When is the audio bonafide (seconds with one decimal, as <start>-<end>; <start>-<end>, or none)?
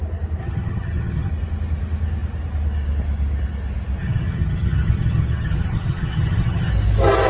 0.0-0.4; 1.3-4.0; 6.7-7.3